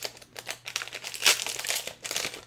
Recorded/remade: recorded